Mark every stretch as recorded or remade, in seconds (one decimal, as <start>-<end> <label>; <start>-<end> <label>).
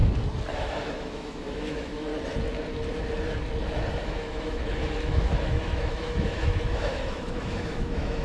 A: 0.0-0.5 recorded; 0.5-2.1 remade; 2.1-3.9 recorded; 3.9-8.2 remade